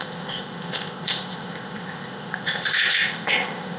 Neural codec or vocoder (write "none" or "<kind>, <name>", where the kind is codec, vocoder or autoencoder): codec, ZipCodec